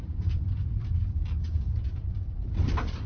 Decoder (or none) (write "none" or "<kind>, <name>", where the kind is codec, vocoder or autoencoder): vocoder, BigVGAN v2